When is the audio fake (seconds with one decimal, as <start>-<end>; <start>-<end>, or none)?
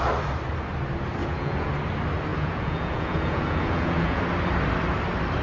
1.2-1.7; 2.3-4.2